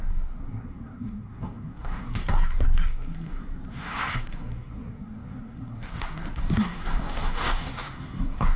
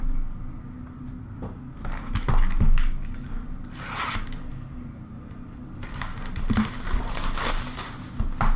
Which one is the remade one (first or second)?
first